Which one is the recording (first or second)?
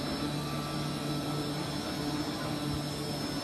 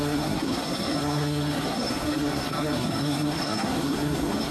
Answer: first